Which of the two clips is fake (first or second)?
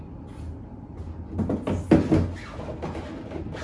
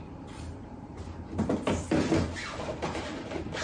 second